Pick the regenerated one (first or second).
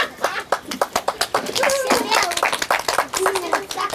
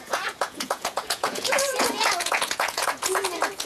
second